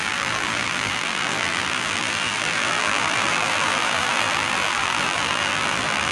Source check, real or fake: fake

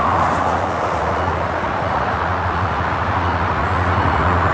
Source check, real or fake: fake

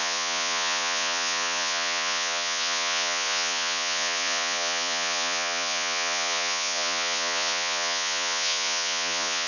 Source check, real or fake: fake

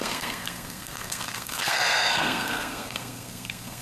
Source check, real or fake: fake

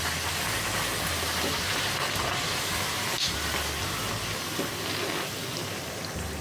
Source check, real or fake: real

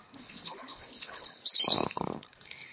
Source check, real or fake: fake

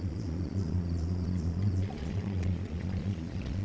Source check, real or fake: fake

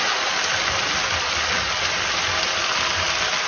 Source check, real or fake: real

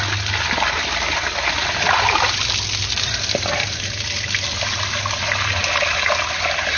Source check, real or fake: real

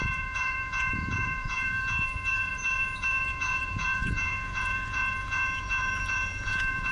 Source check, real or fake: fake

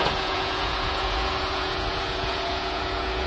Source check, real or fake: fake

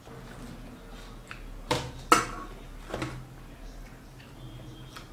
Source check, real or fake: real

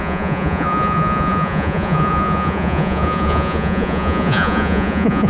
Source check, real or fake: fake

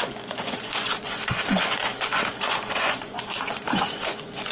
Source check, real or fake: fake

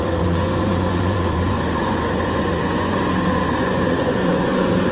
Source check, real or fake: fake